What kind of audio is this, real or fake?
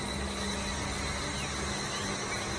real